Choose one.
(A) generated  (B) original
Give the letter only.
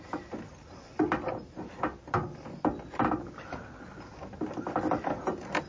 B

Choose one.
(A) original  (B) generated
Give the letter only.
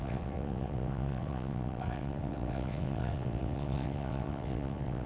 B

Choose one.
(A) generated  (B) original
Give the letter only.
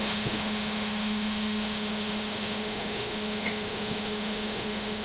A